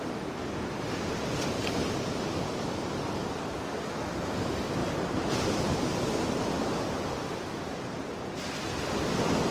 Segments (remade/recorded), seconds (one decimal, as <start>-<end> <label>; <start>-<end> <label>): 0.0-4.8 recorded; 4.8-5.7 remade; 5.7-9.5 recorded